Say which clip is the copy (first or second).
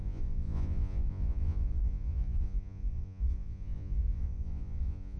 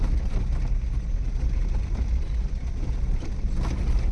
first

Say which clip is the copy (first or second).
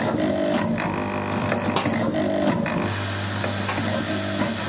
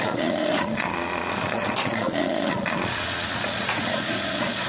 second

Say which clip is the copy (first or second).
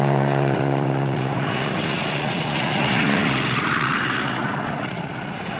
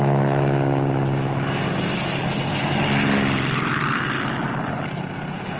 first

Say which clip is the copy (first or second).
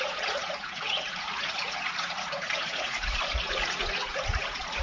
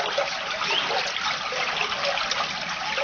first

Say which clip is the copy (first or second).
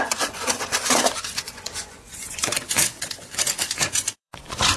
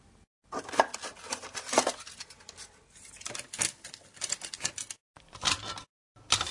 first